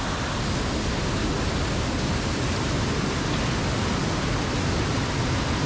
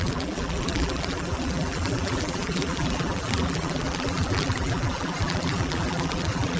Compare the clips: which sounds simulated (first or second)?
second